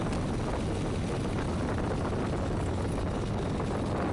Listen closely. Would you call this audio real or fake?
real